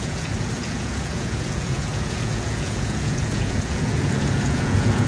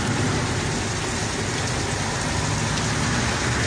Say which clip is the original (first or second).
second